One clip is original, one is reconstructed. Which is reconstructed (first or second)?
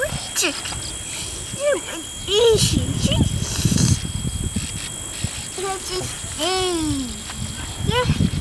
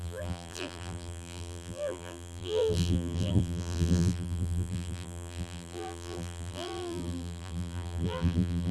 second